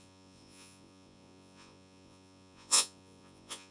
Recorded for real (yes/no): no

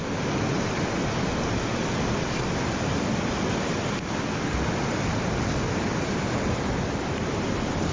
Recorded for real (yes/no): yes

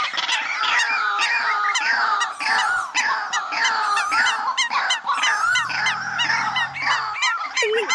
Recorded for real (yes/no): yes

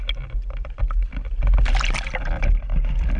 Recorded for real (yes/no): yes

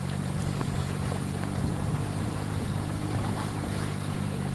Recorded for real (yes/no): no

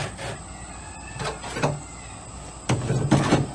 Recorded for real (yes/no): yes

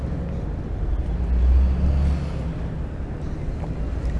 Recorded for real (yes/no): yes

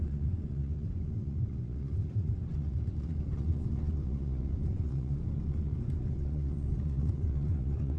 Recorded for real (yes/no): no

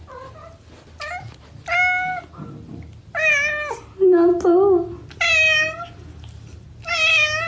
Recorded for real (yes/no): yes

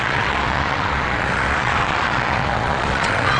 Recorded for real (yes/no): no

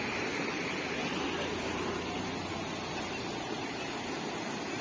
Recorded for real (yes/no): yes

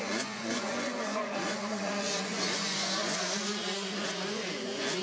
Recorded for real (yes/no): no